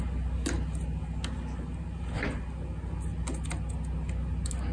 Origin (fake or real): real